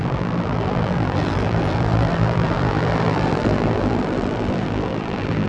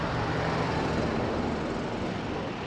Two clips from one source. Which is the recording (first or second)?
second